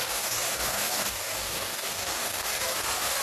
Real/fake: fake